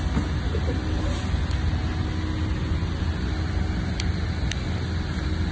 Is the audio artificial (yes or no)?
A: no